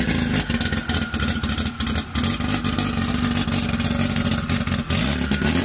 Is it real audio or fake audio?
real